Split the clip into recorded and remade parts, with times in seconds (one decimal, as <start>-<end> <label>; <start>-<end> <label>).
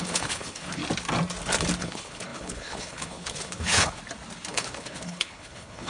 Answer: 0.0-0.8 remade; 0.8-1.8 recorded; 1.8-4.0 remade; 4.0-4.5 recorded; 4.5-5.9 remade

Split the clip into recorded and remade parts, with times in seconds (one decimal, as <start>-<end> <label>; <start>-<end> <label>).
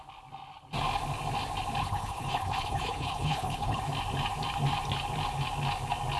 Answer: 0.0-1.8 recorded; 1.8-3.8 remade; 3.8-6.2 recorded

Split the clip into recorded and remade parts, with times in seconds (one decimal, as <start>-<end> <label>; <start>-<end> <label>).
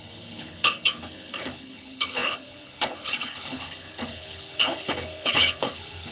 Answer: 0.0-6.1 remade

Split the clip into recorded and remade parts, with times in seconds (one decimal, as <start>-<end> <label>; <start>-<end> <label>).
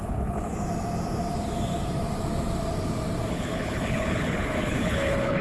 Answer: 0.0-0.5 remade; 0.5-3.3 recorded; 3.3-5.4 remade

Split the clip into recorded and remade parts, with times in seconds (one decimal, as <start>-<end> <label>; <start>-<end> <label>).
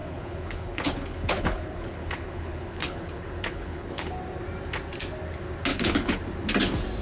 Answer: 0.0-4.2 remade; 4.2-5.7 recorded; 5.7-6.2 remade; 6.2-7.0 recorded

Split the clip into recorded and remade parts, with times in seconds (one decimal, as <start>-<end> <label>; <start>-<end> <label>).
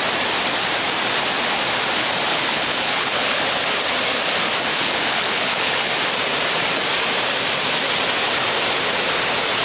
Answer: 0.0-2.3 recorded; 2.3-3.4 remade; 3.4-4.7 recorded; 4.7-5.9 remade; 5.9-9.6 recorded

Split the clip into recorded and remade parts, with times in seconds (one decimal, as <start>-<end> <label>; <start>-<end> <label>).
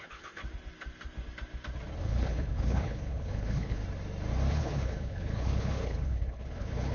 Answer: 0.0-0.4 remade; 0.4-2.0 recorded; 2.0-3.8 remade; 3.8-4.5 recorded; 4.5-6.9 remade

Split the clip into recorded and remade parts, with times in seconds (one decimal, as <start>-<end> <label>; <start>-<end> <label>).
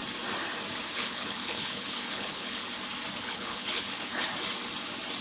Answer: 0.0-0.9 recorded; 0.9-2.6 remade; 2.6-3.2 recorded; 3.2-4.1 remade; 4.1-5.2 recorded